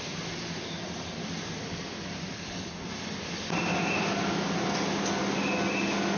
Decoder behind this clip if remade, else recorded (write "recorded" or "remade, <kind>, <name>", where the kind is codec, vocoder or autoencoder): recorded